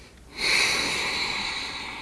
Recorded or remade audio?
recorded